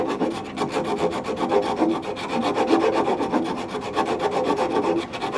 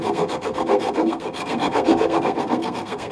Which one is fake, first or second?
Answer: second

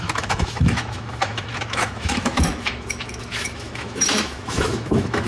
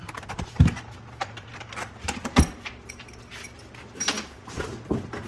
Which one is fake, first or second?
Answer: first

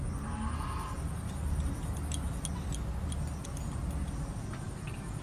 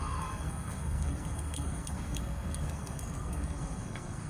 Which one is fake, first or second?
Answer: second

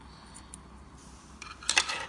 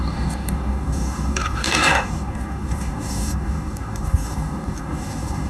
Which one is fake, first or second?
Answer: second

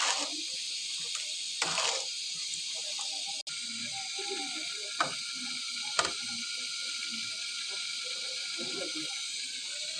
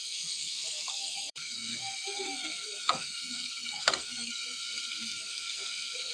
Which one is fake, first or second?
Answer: second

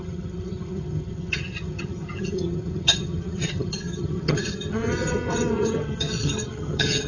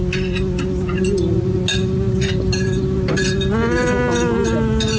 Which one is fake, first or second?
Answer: first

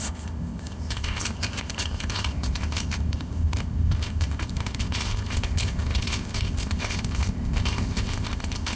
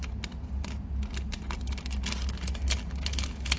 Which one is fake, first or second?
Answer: first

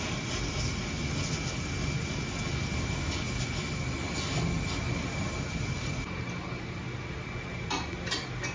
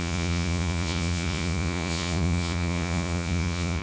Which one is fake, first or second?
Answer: second